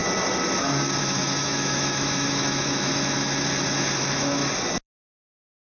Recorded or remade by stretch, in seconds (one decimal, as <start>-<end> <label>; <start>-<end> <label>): 0.0-1.0 recorded; 1.0-2.9 remade; 2.9-4.0 recorded; 4.0-4.4 remade; 4.4-5.6 recorded